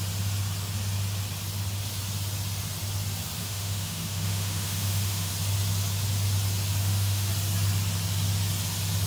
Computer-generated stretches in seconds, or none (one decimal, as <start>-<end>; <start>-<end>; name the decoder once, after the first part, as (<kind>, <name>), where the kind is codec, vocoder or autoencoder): 3.4-5.3 (autoencoder, DAC-VAE); 6.8-7.3